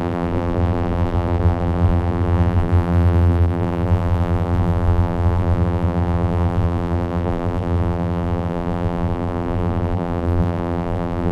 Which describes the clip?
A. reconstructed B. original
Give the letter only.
A